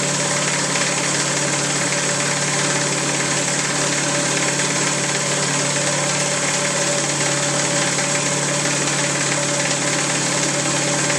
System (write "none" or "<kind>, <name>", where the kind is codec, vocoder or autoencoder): none